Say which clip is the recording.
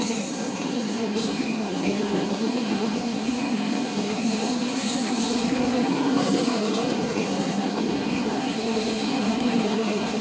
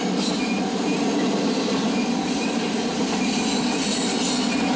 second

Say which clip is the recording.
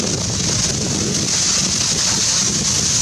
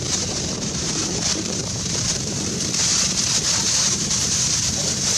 first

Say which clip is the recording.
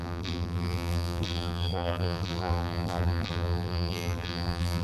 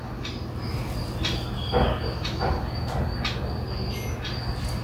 second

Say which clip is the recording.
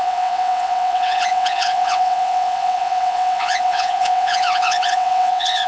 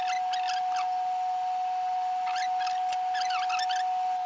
second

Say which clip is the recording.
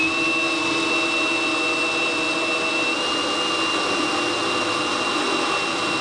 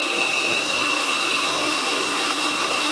first